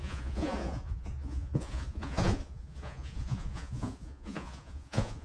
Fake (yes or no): yes